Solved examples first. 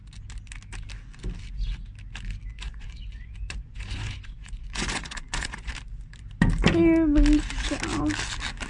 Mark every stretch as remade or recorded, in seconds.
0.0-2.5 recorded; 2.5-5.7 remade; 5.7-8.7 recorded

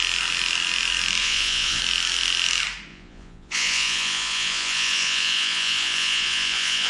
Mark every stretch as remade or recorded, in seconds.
0.0-1.2 recorded; 1.2-1.8 remade; 1.8-2.9 recorded; 2.9-6.9 remade

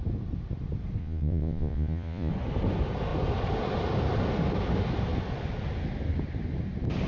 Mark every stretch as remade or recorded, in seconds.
0.0-1.0 recorded; 1.0-2.3 remade; 2.3-7.1 recorded

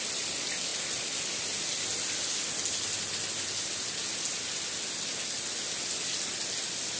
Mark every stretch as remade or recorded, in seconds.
0.0-7.0 recorded

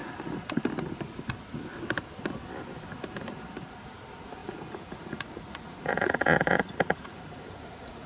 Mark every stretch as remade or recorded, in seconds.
0.0-4.4 recorded; 4.4-8.1 remade